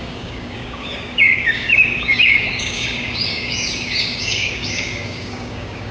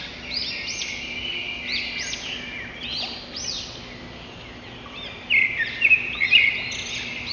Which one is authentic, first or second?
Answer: second